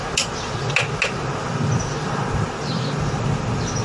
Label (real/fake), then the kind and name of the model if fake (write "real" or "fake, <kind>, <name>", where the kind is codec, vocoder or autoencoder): real